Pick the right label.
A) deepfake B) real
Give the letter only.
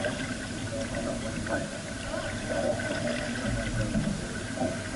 B